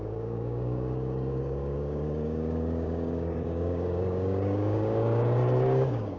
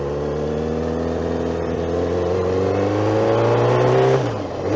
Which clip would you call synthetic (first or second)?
first